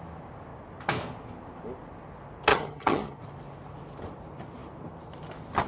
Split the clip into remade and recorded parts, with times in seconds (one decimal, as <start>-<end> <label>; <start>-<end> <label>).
0.0-2.5 recorded; 2.5-3.2 remade; 3.2-5.7 recorded

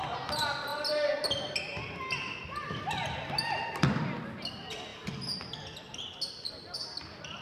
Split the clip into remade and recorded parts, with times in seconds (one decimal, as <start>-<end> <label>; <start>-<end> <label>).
0.0-7.4 recorded

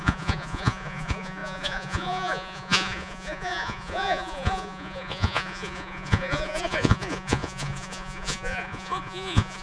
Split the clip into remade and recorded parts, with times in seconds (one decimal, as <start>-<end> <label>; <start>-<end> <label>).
0.0-9.6 remade

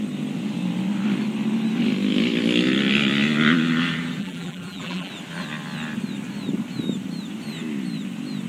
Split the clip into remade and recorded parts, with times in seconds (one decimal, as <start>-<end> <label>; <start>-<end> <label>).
0.0-4.2 recorded; 4.2-5.1 remade; 5.1-8.5 recorded

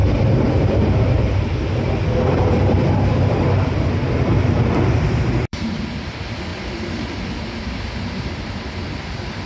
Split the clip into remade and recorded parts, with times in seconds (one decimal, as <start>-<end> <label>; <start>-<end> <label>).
0.0-6.5 remade; 6.5-8.3 recorded; 8.3-9.5 remade